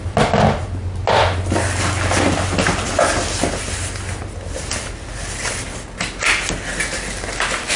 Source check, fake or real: real